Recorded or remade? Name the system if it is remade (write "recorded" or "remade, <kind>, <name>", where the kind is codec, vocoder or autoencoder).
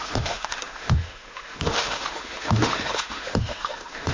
remade, autoencoder, DAC-VAE